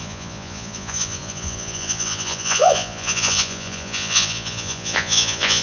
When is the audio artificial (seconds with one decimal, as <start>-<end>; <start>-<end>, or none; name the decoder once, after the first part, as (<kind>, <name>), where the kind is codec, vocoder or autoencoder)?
0.0-5.6 (vocoder, Vocos)